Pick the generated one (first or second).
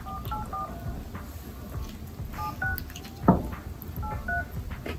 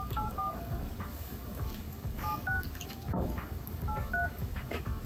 second